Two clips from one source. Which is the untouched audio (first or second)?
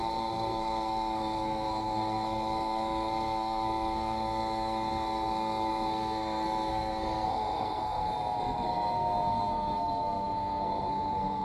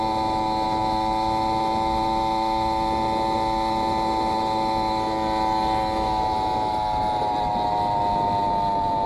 second